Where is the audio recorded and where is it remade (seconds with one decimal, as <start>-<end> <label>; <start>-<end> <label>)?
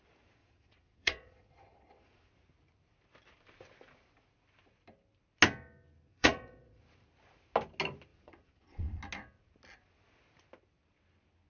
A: 0.0-0.4 recorded; 0.4-2.3 remade; 2.3-6.1 recorded; 6.1-6.8 remade; 6.8-8.1 recorded; 8.1-9.0 remade; 9.0-11.5 recorded